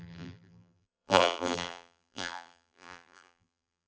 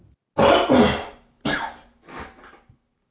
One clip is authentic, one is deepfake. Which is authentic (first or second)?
second